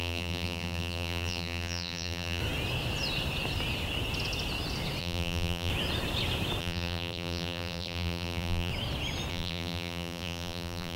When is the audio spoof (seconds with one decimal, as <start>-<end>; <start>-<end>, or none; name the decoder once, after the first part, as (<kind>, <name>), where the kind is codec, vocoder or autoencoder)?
0.0-2.4 (vocoder, BigVGAN v2); 5.0-5.7; 6.6-8.7; 9.3-11.0